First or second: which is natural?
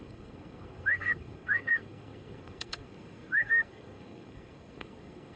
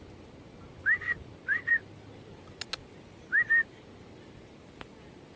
second